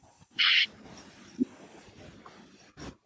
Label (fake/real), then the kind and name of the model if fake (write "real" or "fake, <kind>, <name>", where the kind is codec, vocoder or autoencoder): real